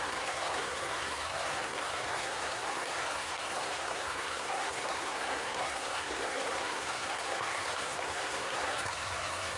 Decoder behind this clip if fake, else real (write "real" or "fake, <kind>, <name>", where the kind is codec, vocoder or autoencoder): fake, codec, SNAC